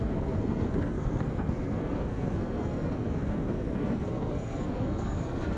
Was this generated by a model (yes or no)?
yes